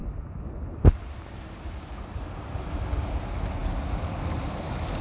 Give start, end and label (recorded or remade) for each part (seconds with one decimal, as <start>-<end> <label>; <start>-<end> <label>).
0.0-5.0 recorded